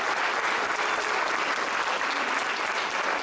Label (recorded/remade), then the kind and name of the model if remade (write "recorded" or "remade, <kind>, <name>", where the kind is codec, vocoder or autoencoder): recorded